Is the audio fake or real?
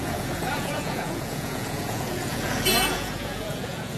fake